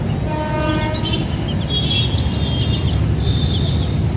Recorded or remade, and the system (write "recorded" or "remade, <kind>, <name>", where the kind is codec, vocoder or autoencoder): recorded